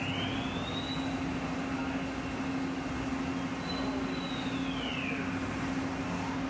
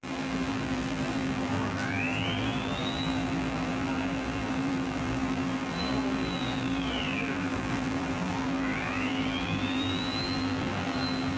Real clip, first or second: first